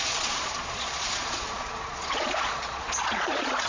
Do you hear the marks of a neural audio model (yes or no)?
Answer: yes